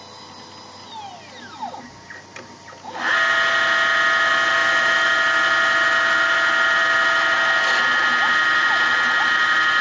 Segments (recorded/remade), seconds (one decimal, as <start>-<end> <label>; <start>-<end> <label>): 0.0-9.8 recorded